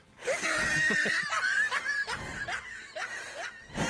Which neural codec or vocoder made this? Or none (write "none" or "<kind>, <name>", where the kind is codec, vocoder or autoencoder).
none